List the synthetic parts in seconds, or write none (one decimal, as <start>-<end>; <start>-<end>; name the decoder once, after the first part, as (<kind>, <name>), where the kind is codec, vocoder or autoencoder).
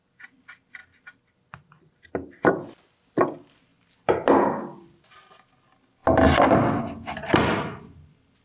0.8-2.5 (vocoder, BigVGAN v2); 3.7-5.0; 6.0-6.8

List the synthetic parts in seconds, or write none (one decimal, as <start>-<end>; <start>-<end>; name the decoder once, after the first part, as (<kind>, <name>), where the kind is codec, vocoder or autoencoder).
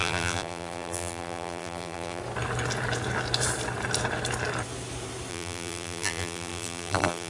0.0-2.2 (vocoder, BigVGAN v2); 5.3-7.3